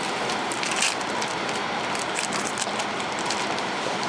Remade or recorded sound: recorded